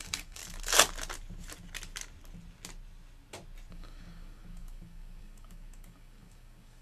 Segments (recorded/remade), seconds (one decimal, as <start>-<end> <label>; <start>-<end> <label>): 0.0-0.4 remade; 0.4-3.7 recorded; 3.7-6.8 remade